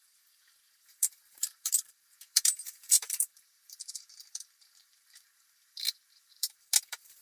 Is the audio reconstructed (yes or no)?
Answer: yes